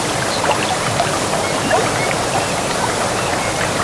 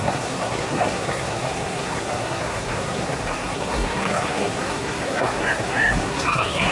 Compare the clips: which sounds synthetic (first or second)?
second